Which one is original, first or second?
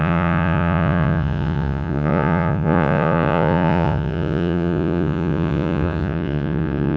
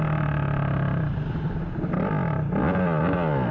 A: second